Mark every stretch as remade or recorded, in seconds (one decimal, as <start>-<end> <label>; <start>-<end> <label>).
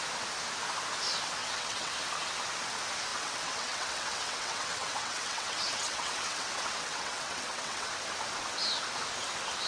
0.0-1.4 recorded; 1.4-1.9 remade; 1.9-3.1 recorded; 3.1-7.9 remade; 7.9-9.7 recorded